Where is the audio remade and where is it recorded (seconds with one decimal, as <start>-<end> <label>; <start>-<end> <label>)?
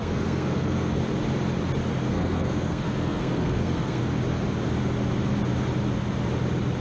0.0-1.0 remade; 1.0-2.1 recorded; 2.1-4.0 remade; 4.0-6.8 recorded